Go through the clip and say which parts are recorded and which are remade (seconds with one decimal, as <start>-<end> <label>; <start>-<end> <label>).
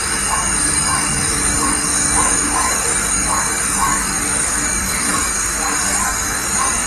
0.0-6.9 remade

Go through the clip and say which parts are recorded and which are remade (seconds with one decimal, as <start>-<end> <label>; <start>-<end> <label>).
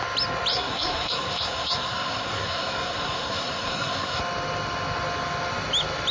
0.0-0.5 recorded; 0.5-4.2 remade; 4.2-6.1 recorded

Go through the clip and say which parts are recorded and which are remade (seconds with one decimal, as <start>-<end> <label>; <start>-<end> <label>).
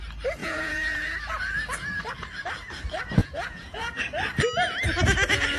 0.0-0.4 recorded; 0.4-1.0 remade; 1.0-3.2 recorded; 3.2-4.0 remade; 4.0-5.6 recorded